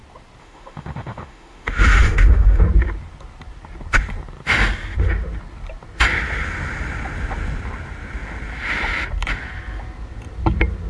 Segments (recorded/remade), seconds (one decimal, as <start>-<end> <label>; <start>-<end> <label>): 0.0-0.4 recorded; 0.4-2.6 remade; 2.6-10.9 recorded